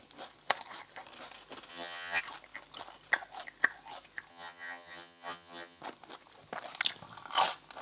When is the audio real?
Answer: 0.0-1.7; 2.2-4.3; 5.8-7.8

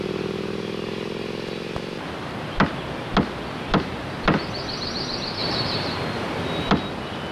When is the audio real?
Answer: 0.0-5.4; 6.7-7.3

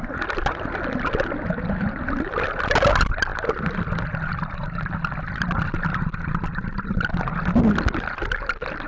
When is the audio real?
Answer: 0.0-8.9

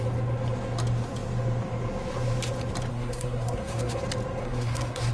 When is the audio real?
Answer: 0.0-2.9; 4.0-4.4

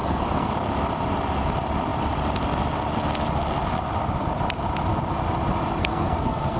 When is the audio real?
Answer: 0.5-5.8